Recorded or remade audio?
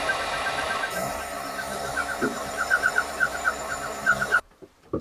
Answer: remade